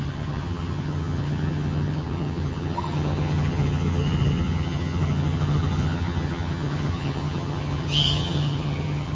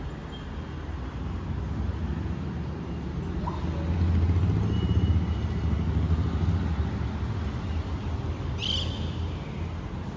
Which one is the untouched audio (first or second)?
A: second